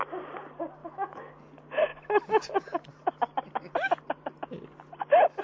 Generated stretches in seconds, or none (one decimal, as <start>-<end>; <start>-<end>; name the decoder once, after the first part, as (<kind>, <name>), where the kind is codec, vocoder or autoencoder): 0.8-1.3 (autoencoder, DAC-VAE)